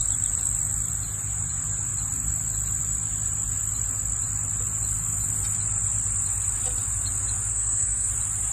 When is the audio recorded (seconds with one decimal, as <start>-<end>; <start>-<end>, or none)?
0.0-7.5; 8.1-8.5

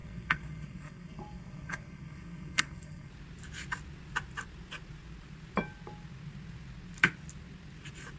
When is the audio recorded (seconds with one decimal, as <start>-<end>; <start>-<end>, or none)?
3.1-8.2

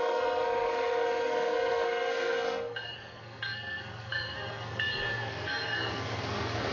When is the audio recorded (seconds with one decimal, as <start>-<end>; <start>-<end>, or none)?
none

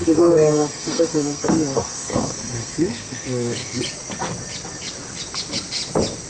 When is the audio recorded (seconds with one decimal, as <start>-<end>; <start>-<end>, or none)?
3.8-6.3

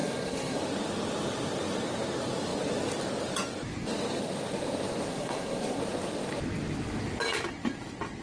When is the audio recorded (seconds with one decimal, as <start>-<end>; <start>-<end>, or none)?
0.6-5.1; 5.8-8.2

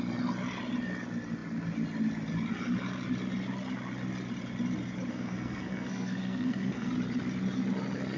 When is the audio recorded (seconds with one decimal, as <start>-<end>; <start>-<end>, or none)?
0.0-5.1; 6.9-8.2

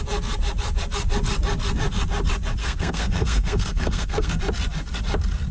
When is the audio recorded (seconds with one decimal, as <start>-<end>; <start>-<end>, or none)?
0.0-2.6; 4.4-5.5

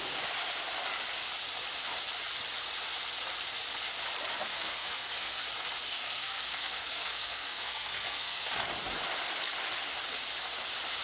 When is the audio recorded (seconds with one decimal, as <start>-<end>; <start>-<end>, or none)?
0.0-4.5; 5.4-5.9; 8.5-11.0